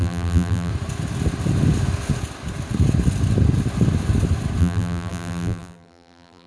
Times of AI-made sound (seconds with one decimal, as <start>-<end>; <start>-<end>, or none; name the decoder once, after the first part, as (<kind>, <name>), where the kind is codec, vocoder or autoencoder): 0.0-0.7 (vocoder, BigVGAN v2); 4.6-6.5

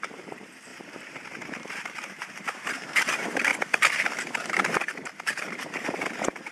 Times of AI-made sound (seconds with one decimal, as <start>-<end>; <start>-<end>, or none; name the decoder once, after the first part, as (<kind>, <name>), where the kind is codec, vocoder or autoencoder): 0.0-0.7 (vocoder, BigVGAN v2); 1.5-3.5; 4.5-4.9; 5.4-6.5

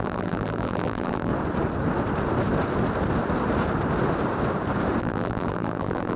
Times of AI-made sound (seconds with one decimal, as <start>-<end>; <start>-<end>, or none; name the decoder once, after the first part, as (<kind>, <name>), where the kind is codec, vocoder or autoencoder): 0.0-1.3 (vocoder, BigVGAN v2); 5.0-6.2

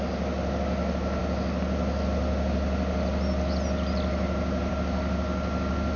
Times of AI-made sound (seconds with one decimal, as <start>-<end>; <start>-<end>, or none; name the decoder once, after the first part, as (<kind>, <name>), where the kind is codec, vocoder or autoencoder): none

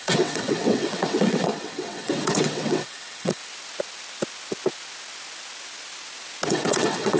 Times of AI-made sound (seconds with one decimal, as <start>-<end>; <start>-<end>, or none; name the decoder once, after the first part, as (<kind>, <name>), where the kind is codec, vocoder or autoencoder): 0.0-3.4 (vocoder, WaveNeXt); 6.5-7.2

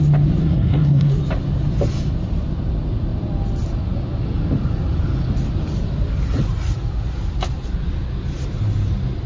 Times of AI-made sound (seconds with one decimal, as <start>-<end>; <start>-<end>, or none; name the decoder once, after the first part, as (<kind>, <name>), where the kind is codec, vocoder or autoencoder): 0.4-1.2 (codec, SNAC)

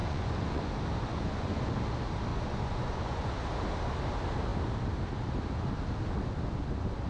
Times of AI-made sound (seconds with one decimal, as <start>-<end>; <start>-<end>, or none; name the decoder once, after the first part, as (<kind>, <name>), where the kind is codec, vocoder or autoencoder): 0.0-0.7 (vocoder, Vocos); 1.1-1.6; 2.3-3.3